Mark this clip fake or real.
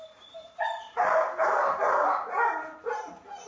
fake